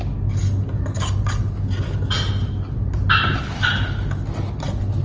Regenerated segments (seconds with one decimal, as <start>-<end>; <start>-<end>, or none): none